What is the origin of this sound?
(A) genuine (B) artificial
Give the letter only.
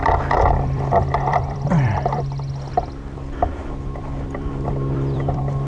B